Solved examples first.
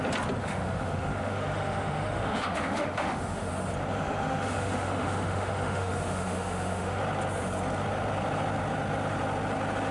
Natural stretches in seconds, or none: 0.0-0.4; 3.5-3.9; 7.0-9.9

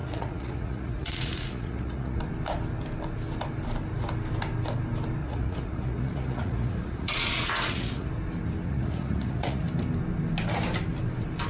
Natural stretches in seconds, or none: 2.2-5.2; 8.1-8.6; 9.6-11.5

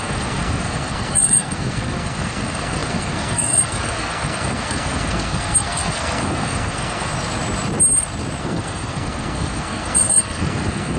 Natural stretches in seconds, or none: 7.1-8.4

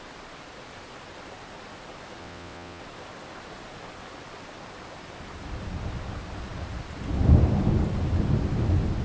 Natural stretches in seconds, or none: 0.0-2.2; 2.8-9.0

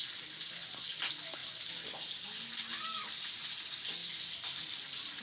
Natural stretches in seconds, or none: 0.0-4.0

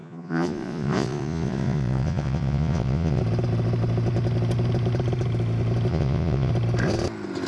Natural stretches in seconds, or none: 3.2-5.9; 6.5-7.5

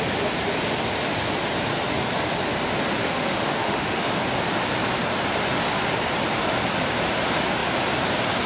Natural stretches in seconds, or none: 0.0-3.0; 4.1-8.5

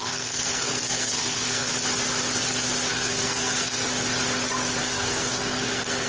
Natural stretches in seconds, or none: 1.7-2.9; 3.8-4.8